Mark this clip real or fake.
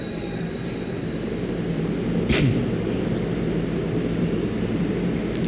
real